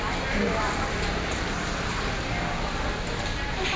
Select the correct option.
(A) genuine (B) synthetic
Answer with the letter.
A